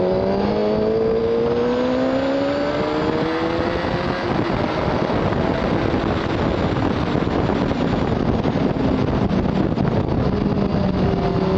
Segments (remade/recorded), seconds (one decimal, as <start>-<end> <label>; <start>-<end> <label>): 0.0-11.6 recorded